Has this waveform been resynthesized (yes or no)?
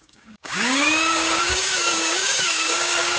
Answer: yes